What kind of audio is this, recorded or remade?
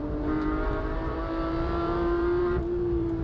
remade